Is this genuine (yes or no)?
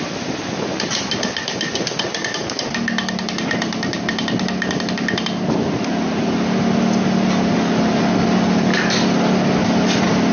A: yes